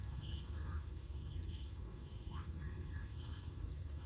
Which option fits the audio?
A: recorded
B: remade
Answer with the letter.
B